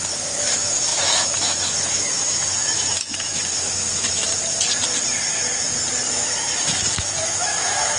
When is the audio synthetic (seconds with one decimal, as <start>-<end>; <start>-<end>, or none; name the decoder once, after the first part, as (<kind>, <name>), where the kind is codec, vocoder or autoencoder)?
0.0-4.3 (autoencoder, DAC-VAE); 6.1-8.0